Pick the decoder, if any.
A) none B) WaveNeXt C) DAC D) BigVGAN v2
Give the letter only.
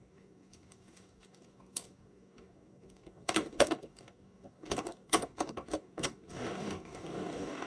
C